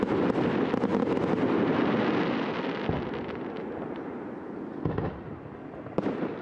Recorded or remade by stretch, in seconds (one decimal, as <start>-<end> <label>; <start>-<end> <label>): 0.0-6.4 recorded